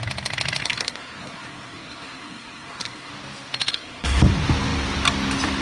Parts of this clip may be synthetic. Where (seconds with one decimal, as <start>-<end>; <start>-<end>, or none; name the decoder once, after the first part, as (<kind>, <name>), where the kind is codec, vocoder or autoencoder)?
0.6-3.1 (codec, SNAC); 3.7-4.2